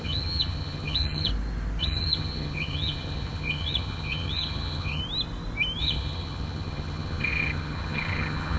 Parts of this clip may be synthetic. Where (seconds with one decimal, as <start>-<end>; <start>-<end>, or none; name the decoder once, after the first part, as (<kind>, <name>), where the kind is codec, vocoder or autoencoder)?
0.0-1.3 (vocoder, HiFi-GAN); 1.8-5.0; 5.8-8.6